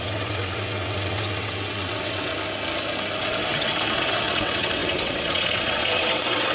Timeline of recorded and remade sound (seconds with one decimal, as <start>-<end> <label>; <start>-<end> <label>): 0.0-2.3 remade; 2.3-3.2 recorded; 3.2-6.5 remade